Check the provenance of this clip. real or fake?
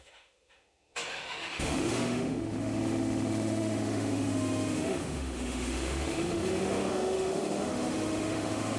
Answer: fake